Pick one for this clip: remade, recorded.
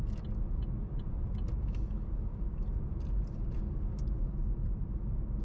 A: recorded